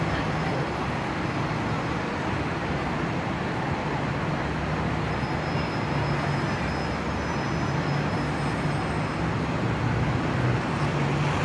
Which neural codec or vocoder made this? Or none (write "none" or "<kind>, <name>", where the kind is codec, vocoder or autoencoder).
none